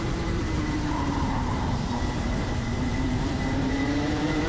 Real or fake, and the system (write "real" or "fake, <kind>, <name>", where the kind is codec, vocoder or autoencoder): fake, vocoder, BigVGAN v2